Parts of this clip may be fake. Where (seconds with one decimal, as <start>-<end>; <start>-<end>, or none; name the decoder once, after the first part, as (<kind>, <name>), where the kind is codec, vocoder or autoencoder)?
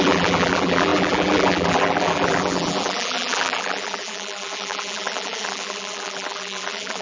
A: 0.0-7.0 (vocoder, BigVGAN v2)